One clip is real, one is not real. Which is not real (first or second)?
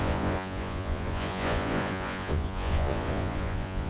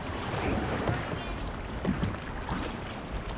first